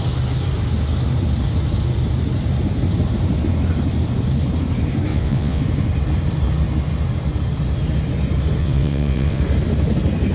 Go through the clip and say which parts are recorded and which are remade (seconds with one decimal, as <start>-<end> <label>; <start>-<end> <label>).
0.0-5.1 recorded; 5.1-5.6 remade; 5.6-8.6 recorded; 8.6-9.4 remade; 9.4-10.3 recorded